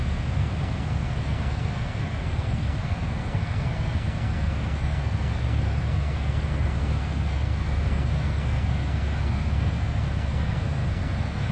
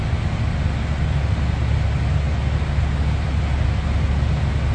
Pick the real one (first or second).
second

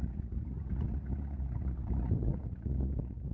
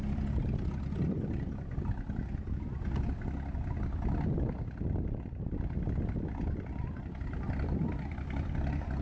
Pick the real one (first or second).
second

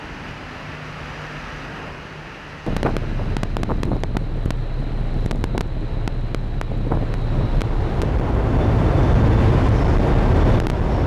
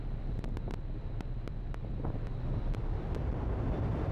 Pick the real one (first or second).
first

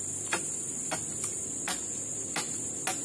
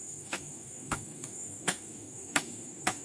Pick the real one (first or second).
first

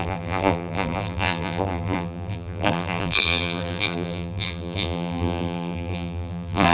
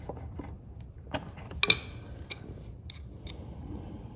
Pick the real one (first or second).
second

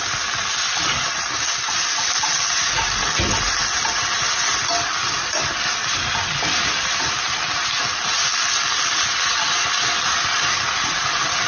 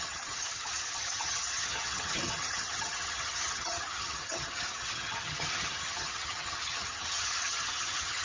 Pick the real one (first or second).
first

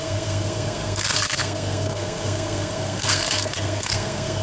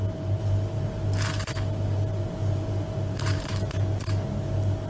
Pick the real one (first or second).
second